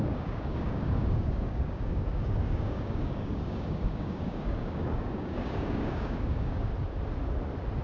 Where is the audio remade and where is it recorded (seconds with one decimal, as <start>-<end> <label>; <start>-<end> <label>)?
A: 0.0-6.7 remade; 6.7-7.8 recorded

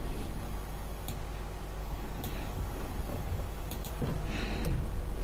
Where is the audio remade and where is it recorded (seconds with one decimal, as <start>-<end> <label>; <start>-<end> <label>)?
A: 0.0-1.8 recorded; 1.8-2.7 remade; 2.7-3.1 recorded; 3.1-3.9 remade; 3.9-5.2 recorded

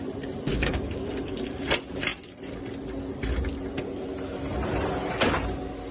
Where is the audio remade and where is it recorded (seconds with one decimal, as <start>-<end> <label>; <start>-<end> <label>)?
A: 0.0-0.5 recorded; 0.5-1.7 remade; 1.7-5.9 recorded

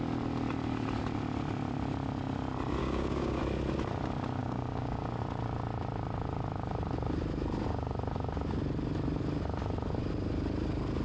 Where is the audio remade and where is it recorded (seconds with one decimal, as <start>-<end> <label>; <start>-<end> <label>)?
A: 0.0-2.8 recorded; 2.8-3.4 remade; 3.4-4.4 recorded; 4.4-5.2 remade; 5.2-11.0 recorded